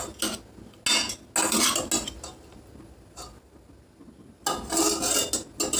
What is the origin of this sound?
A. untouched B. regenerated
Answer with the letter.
A